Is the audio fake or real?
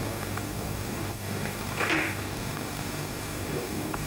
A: fake